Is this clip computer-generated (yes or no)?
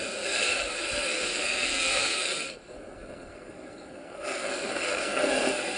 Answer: yes